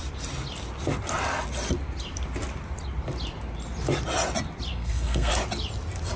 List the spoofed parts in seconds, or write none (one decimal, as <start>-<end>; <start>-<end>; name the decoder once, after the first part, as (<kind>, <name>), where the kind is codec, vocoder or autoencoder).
4.7-5.3 (codec, SNAC)